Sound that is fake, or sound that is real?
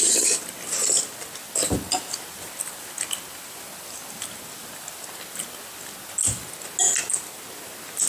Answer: real